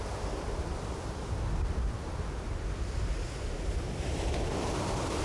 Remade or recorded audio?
recorded